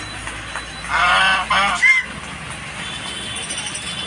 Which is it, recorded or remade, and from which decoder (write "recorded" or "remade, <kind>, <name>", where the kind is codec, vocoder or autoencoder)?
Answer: recorded